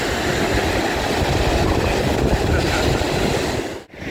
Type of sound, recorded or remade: recorded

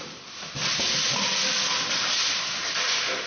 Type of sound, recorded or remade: recorded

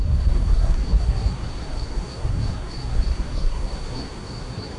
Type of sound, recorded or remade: remade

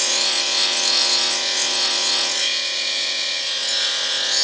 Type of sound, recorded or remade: remade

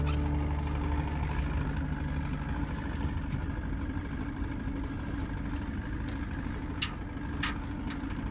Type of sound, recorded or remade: recorded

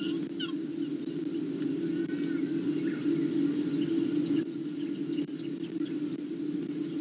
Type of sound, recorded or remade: recorded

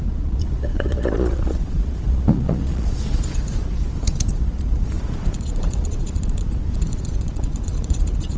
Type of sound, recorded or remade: remade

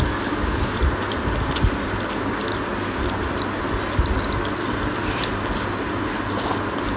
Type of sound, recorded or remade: recorded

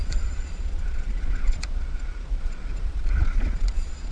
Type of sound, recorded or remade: remade